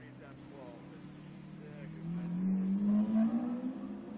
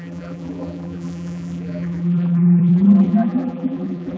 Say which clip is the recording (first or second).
first